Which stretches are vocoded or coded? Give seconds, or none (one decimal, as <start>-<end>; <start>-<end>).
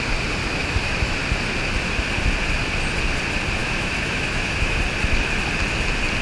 0.4-1.2; 3.6-4.8